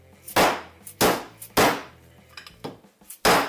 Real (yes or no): yes